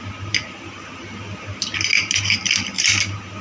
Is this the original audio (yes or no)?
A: yes